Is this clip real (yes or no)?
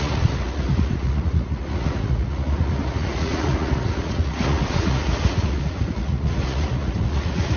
no